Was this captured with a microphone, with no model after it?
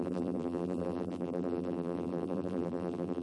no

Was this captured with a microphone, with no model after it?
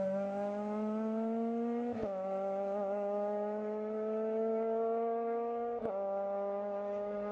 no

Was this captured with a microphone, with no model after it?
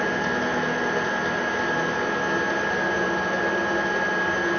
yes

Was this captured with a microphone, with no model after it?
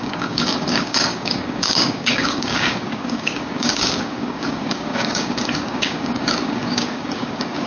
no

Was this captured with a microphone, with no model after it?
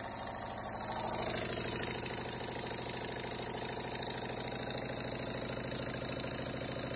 yes